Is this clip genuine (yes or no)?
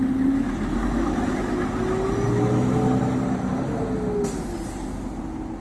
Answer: yes